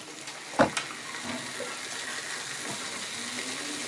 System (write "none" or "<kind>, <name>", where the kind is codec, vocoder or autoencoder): none